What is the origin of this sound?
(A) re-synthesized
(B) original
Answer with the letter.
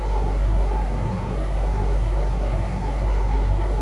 A